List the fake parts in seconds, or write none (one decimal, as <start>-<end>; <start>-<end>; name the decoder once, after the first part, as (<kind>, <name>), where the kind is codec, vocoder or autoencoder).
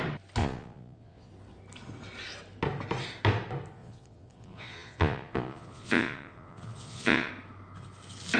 0.4-1.3 (vocoder, Vocos); 3.8-7.3